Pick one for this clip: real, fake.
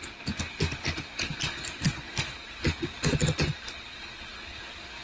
real